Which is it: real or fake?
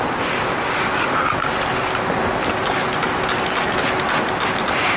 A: real